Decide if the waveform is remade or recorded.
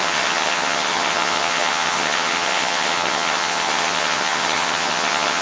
remade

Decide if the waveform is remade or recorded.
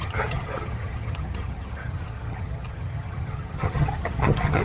remade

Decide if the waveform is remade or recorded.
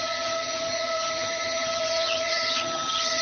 remade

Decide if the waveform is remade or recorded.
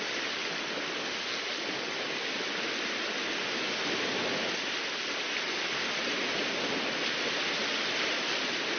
recorded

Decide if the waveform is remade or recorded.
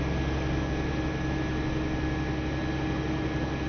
recorded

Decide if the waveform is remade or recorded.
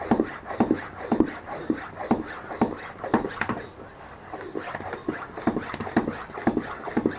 recorded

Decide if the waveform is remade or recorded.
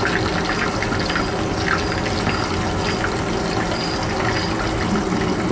recorded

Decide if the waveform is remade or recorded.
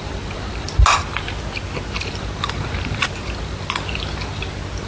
recorded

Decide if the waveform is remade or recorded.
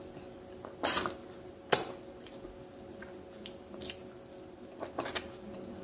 recorded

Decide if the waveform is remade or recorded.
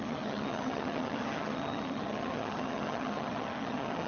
remade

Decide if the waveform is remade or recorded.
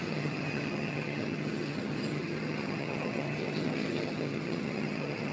remade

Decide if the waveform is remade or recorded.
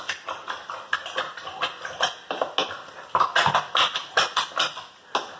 recorded